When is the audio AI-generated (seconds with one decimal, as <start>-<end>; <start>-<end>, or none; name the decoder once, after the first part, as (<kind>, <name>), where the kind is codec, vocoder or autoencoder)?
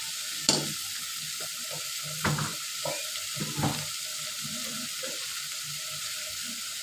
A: 2.5-3.0 (vocoder, BigVGAN v2); 5.3-5.8